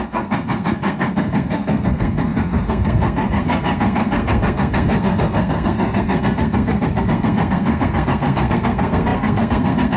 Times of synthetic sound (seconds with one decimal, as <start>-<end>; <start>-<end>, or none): 0.0-10.0